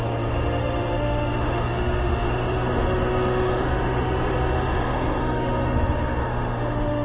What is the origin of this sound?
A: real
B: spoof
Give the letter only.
B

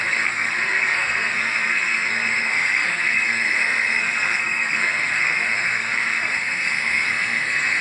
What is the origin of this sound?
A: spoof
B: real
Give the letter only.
A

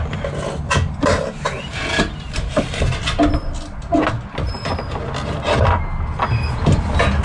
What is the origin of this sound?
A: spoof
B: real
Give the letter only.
B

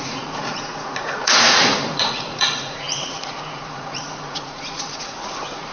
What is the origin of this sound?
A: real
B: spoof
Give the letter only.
B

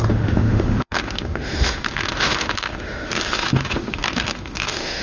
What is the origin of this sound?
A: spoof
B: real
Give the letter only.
A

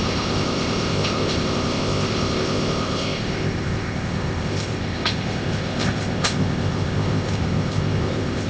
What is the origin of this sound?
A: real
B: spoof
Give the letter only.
B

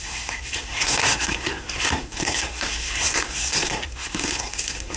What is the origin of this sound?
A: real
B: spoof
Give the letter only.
B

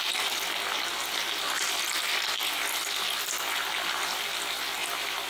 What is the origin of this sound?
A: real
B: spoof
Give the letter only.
A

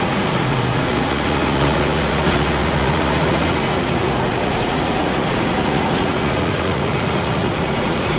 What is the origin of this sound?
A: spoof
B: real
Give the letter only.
A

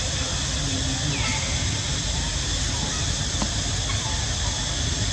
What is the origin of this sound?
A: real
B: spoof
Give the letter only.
A